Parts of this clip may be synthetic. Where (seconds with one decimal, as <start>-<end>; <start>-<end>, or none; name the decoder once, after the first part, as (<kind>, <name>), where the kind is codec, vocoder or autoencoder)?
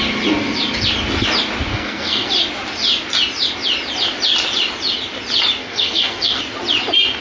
1.7-2.3 (codec, SNAC); 5.6-6.4